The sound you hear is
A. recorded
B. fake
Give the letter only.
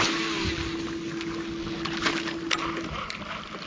A